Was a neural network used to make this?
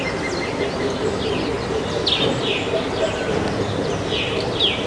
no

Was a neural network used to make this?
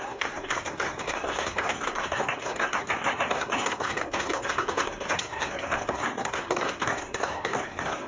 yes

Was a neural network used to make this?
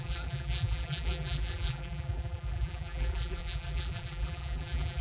yes